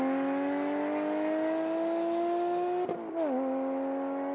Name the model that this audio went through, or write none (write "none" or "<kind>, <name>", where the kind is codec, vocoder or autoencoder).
none